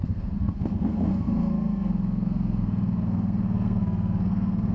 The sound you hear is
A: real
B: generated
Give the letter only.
B